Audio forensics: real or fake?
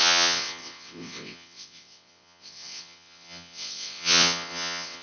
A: fake